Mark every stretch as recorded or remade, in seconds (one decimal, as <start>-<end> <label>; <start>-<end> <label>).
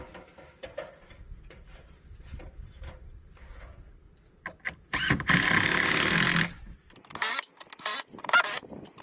0.0-0.6 recorded; 0.6-3.5 remade; 3.5-9.0 recorded